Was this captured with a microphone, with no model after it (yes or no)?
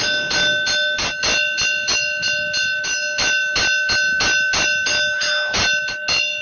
yes